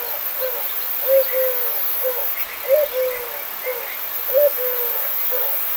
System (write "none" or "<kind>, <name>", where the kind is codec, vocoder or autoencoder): none